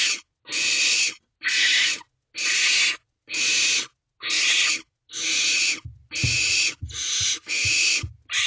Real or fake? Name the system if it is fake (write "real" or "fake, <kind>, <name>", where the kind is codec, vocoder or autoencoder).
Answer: real